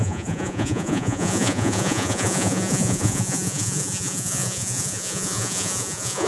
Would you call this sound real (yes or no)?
no